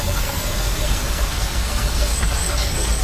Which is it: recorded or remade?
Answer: remade